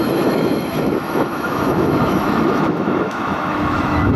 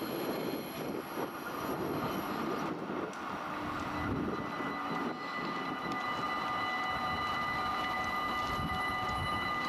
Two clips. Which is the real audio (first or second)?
second